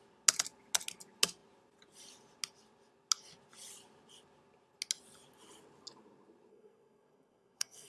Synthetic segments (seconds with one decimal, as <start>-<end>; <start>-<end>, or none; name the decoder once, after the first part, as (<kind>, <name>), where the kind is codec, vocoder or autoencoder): 6.5-7.9 (codec, SNAC)